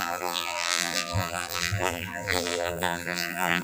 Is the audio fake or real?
fake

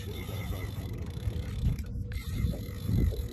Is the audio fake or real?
fake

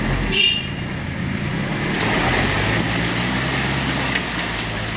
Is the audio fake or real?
real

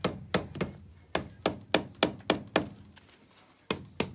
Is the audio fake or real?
real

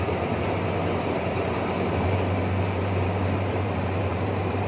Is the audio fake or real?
fake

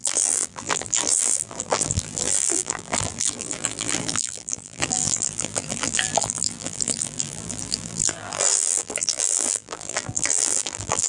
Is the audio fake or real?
fake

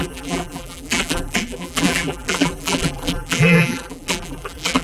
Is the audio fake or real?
fake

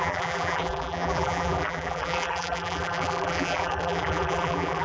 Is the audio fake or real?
fake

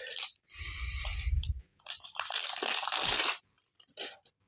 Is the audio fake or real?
fake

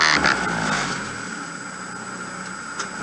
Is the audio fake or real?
real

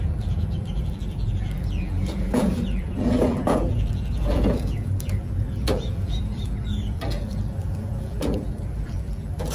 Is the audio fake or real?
fake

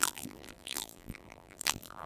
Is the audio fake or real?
fake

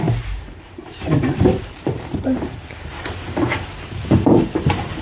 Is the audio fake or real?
fake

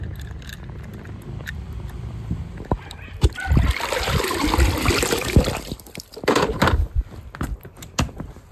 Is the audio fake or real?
fake